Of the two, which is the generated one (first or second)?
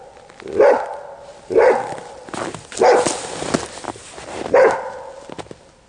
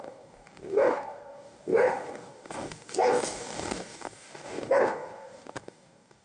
second